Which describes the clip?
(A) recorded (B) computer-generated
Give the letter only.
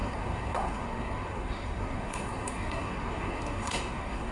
B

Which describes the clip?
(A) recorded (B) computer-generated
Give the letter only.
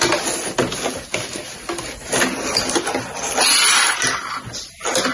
A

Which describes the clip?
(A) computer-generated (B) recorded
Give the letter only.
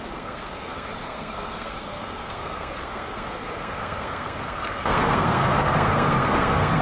A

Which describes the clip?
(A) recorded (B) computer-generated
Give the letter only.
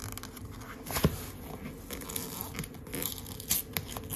A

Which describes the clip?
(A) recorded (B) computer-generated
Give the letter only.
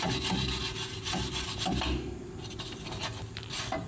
A